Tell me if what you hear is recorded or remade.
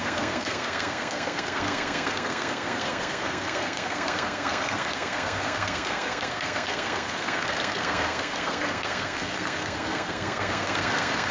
remade